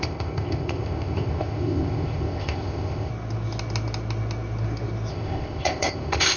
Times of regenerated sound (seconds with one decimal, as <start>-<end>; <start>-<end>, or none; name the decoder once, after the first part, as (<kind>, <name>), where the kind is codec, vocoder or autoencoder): 0.0-3.1 (codec, ZipCodec); 5.1-6.4